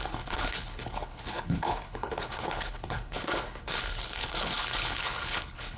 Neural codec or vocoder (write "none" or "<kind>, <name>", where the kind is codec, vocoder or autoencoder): codec, HILCodec